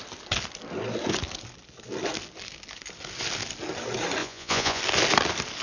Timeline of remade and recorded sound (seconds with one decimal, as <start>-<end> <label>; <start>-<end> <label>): 0.0-4.2 recorded; 4.2-4.8 remade; 4.8-5.6 recorded